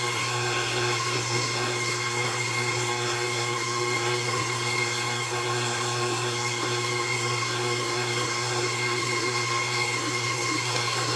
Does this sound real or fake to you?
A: fake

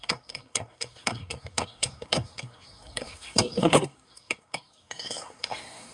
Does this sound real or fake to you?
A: fake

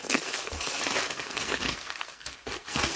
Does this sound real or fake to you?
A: fake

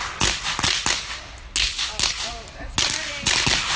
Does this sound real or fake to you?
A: real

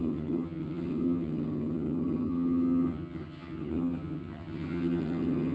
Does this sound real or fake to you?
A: fake